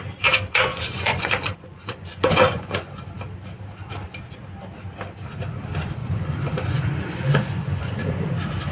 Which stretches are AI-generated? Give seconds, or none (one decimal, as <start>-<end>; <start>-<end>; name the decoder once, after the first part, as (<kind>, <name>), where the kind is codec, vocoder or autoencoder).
0.7-3.0 (vocoder, Vocos); 6.0-8.1